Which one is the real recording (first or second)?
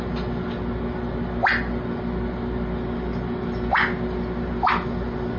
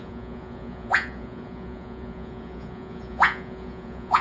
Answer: first